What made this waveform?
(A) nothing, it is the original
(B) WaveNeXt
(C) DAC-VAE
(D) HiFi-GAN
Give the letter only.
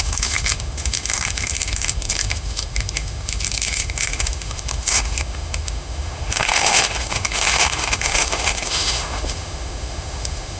C